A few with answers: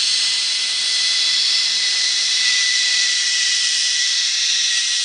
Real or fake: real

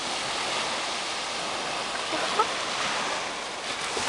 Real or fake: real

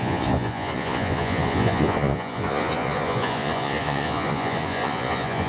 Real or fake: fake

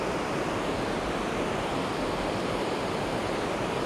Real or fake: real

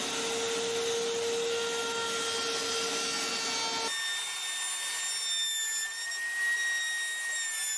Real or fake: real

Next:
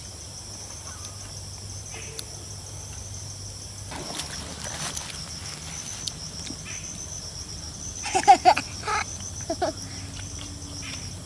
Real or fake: real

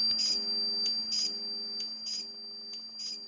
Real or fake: real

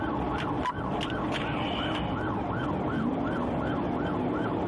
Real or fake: real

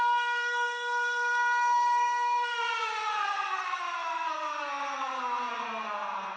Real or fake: fake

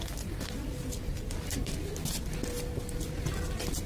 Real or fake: real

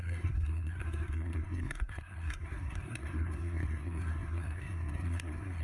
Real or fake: fake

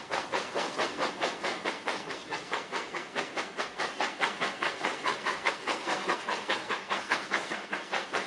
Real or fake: fake